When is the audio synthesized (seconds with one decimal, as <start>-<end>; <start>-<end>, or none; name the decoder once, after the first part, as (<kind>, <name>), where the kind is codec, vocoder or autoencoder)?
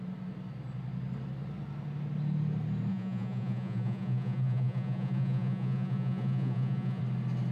2.9-7.0 (vocoder, Vocos)